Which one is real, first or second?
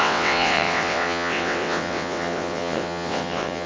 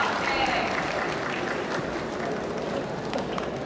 second